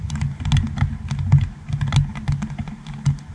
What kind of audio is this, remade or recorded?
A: recorded